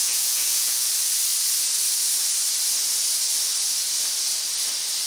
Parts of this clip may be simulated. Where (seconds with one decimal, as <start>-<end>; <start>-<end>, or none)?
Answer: 0.0-0.9